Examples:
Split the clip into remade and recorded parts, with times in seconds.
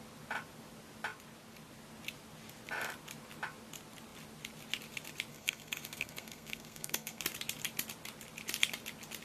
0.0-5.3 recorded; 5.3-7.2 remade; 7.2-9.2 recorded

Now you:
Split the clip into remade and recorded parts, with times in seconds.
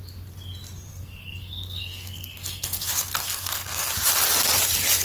0.0-0.9 recorded; 0.9-3.9 remade; 3.9-5.0 recorded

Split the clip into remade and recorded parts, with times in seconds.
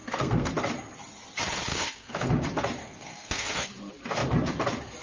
0.0-0.5 remade; 0.5-1.7 recorded; 1.7-2.3 remade; 2.3-2.8 recorded; 2.8-3.7 remade; 3.7-5.0 recorded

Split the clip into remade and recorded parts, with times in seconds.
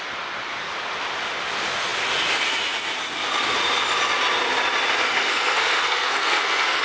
0.0-5.1 recorded; 5.1-6.8 remade